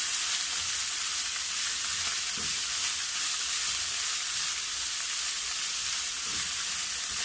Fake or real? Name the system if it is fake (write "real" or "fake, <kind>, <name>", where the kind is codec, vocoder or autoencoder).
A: real